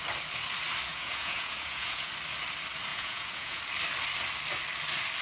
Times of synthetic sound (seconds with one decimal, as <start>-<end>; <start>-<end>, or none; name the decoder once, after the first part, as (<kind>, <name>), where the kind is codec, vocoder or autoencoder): 0.9-2.1 (vocoder, Vocos); 2.9-3.6

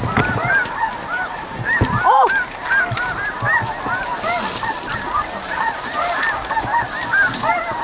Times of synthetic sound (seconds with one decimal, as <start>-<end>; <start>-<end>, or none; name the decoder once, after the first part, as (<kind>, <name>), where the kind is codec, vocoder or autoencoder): none

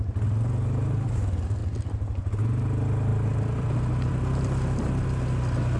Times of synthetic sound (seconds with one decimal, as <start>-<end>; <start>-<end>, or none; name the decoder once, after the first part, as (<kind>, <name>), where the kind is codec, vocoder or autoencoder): 1.6-2.4 (vocoder, BigVGAN v2); 3.1-4.1

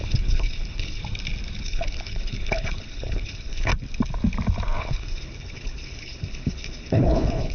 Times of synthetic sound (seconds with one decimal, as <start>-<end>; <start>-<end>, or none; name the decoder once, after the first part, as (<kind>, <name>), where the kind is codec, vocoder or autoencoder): 0.0-1.0 (codec, HILCodec); 1.6-3.7; 4.8-7.5

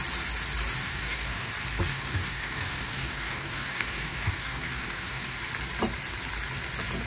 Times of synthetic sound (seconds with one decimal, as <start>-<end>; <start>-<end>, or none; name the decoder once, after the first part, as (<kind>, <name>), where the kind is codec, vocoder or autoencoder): 0.8-1.5 (codec, DAC); 1.9-5.4